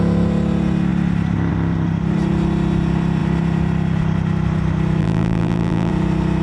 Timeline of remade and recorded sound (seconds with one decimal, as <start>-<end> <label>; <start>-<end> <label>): 0.0-5.0 recorded; 5.0-5.9 remade; 5.9-6.4 recorded